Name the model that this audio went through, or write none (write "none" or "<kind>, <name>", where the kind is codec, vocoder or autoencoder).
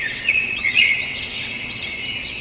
vocoder, WaveNeXt